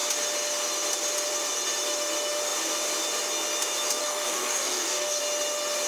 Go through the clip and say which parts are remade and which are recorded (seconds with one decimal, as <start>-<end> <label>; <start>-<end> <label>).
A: 0.0-4.0 recorded; 4.0-5.2 remade; 5.2-5.9 recorded